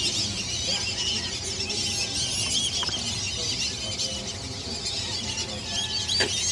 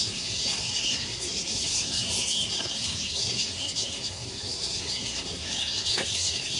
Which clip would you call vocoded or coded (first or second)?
second